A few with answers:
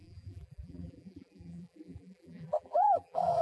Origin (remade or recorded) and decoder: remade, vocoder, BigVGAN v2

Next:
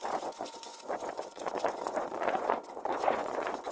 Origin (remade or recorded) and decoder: remade, vocoder, Vocos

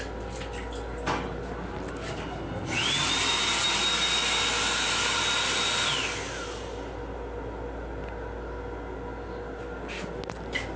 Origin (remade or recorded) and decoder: recorded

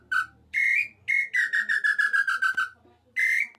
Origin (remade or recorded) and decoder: recorded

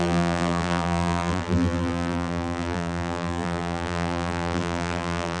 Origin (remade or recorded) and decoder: remade, vocoder, BigVGAN v2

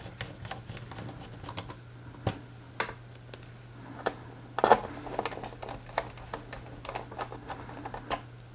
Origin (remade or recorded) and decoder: recorded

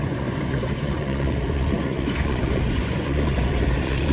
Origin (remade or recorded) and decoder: remade, vocoder, Vocos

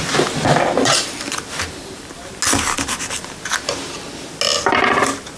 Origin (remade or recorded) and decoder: recorded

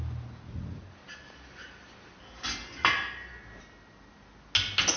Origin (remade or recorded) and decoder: recorded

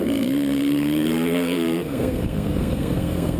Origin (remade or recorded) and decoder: remade, codec, SNAC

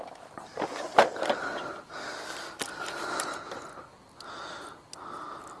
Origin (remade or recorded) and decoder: recorded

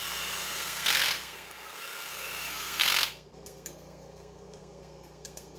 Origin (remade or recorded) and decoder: remade, codec, SNAC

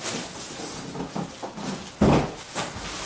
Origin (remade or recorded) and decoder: recorded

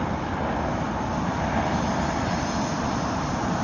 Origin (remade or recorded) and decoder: remade, vocoder, BigVGAN v2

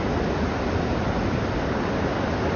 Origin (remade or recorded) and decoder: recorded